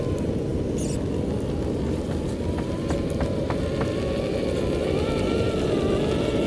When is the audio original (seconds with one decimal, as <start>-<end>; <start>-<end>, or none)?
0.0-6.5